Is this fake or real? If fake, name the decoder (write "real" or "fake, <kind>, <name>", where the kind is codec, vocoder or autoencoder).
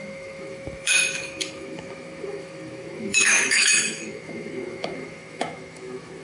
fake, autoencoder, DAC-VAE